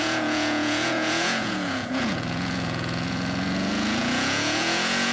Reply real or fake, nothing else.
fake